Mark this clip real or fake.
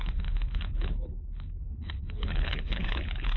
fake